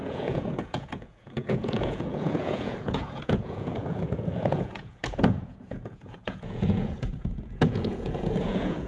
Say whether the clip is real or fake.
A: fake